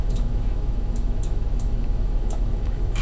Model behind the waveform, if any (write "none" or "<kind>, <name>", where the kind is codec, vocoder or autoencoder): autoencoder, DAC-VAE